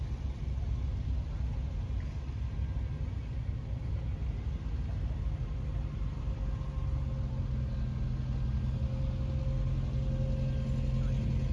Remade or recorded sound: recorded